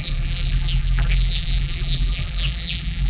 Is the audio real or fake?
fake